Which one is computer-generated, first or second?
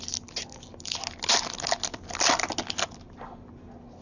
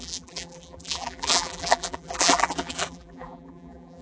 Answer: second